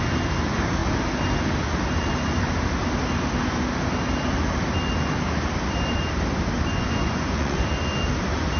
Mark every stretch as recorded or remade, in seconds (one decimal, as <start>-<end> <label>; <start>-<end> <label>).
0.0-6.7 recorded; 6.7-7.6 remade; 7.6-8.6 recorded